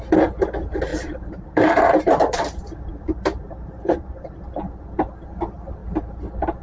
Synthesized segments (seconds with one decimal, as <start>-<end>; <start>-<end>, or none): 0.9-4.6

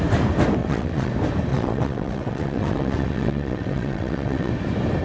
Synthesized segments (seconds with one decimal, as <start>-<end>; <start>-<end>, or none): 0.6-1.1; 1.5-4.5

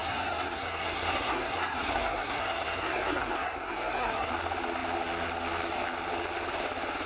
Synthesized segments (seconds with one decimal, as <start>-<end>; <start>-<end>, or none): 0.0-4.3

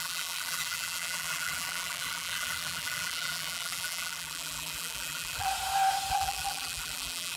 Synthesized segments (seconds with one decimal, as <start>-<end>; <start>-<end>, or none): 0.0-5.5; 6.1-7.4